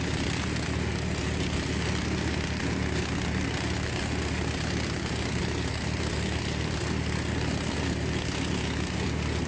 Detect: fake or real real